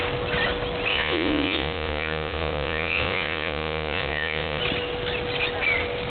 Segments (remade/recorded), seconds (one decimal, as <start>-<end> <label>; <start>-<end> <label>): 0.0-0.9 recorded; 0.9-4.6 remade; 4.6-6.1 recorded